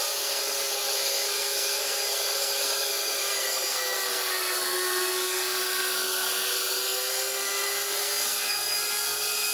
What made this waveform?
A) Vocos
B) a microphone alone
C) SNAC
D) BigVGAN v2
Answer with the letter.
C